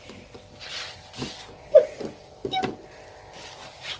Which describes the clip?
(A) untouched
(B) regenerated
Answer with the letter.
A